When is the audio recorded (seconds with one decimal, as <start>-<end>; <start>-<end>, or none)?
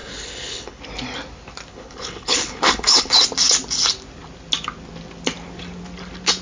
0.8-1.7; 3.1-6.4